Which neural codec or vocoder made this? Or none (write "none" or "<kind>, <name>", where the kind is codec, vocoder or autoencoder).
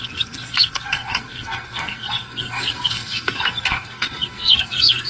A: codec, SNAC